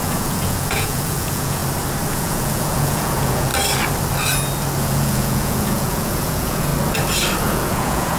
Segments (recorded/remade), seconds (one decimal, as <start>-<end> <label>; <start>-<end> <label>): 0.0-1.6 remade; 1.6-2.1 recorded; 2.1-3.5 remade; 3.5-4.8 recorded; 4.8-6.7 remade; 6.7-7.4 recorded; 7.4-8.2 remade

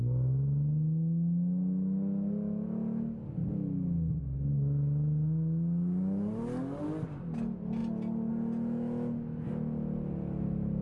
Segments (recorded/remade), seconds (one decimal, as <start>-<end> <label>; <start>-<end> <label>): 0.0-10.8 recorded

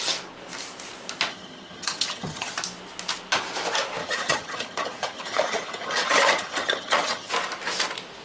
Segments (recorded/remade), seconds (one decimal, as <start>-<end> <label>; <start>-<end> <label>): 0.0-1.3 recorded; 1.3-2.5 remade; 2.5-4.0 recorded; 4.0-7.3 remade; 7.3-8.2 recorded

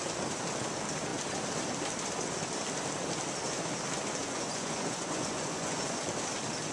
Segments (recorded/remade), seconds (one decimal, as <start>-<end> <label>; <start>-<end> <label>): 0.0-4.2 recorded; 4.2-6.0 remade; 6.0-6.7 recorded

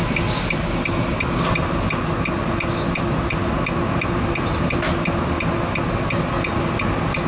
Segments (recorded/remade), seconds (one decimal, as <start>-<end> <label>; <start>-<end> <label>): 0.0-7.3 recorded